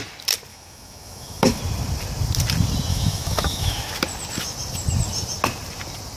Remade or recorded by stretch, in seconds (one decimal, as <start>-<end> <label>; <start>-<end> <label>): 0.0-0.5 recorded; 0.5-1.6 remade; 1.6-2.9 recorded; 2.9-3.9 remade; 3.9-6.2 recorded